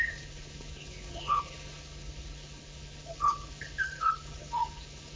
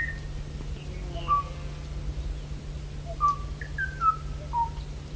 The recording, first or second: second